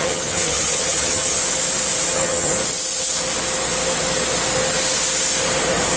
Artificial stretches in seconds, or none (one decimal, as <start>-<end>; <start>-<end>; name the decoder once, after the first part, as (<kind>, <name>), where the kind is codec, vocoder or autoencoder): 0.0-1.4 (vocoder, HiFi-GAN); 2.1-2.5